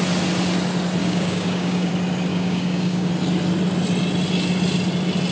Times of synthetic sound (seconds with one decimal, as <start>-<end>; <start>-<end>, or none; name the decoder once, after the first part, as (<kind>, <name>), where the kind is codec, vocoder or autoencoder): 1.0-1.9 (codec, DAC); 2.3-3.1